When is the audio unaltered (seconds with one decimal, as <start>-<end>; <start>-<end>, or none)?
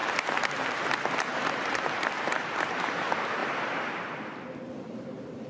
0.0-3.4; 4.0-5.5